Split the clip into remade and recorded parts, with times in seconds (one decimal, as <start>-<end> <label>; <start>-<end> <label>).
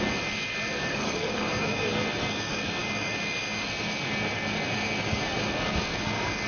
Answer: 0.0-0.9 recorded; 0.9-1.5 remade; 1.5-6.5 recorded